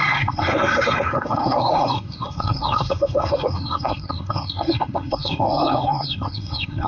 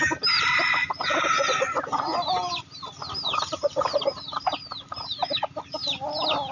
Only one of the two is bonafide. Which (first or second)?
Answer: second